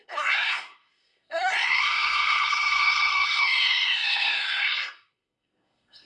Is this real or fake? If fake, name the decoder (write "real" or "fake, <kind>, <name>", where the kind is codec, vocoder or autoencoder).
fake, codec, SNAC